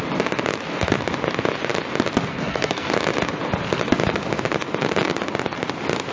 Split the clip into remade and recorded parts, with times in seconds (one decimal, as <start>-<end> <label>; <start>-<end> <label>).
0.0-2.3 recorded; 2.3-2.9 remade; 2.9-6.1 recorded